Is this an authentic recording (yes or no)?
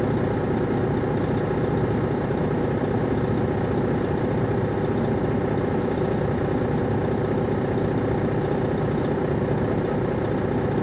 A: yes